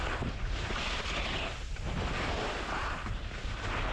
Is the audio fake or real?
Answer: real